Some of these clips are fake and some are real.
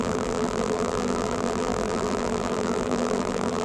fake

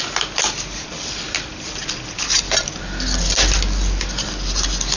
real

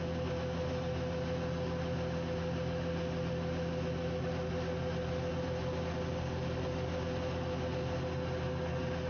real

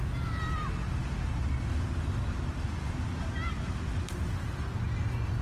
real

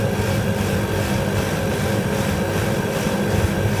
real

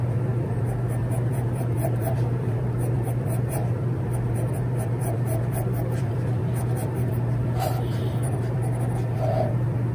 fake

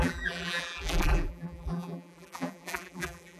fake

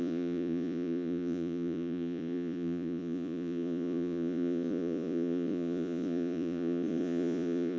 fake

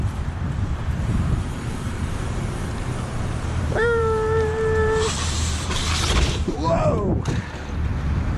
fake